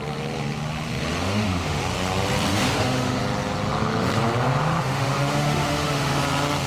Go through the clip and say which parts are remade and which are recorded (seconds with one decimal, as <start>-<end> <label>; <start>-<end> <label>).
0.0-1.2 recorded; 1.2-1.8 remade; 1.8-2.5 recorded; 2.5-3.2 remade; 3.2-4.8 recorded; 4.8-6.2 remade; 6.2-6.7 recorded